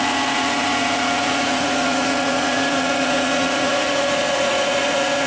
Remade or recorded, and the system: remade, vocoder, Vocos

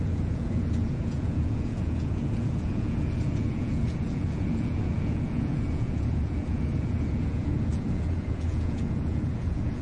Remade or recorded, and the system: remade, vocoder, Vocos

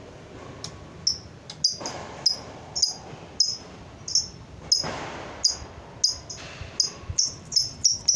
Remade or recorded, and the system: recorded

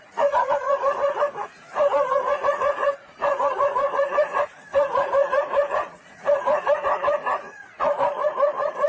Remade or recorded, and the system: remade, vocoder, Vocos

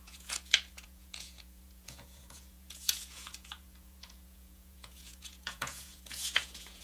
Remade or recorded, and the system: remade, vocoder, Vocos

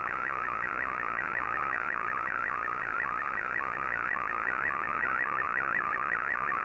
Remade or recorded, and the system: remade, vocoder, Vocos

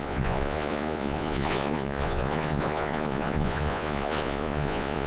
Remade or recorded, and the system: remade, vocoder, Vocos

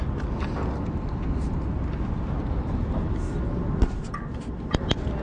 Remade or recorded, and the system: recorded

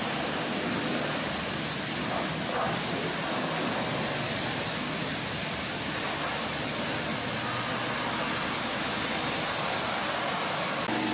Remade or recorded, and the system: recorded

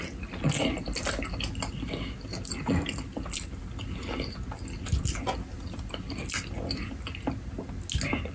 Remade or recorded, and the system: recorded